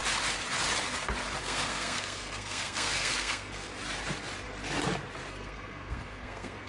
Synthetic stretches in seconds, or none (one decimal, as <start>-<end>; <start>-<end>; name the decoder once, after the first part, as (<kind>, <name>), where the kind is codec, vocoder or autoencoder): 1.4-3.7 (codec, SNAC); 5.3-6.7